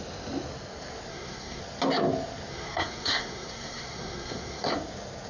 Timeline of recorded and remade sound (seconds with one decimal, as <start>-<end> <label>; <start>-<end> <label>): 0.0-1.1 recorded; 1.1-1.6 remade; 1.6-2.5 recorded; 2.5-4.7 remade; 4.7-5.3 recorded